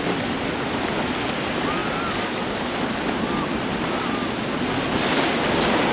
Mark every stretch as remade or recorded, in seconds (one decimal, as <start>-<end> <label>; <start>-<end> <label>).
0.0-5.9 recorded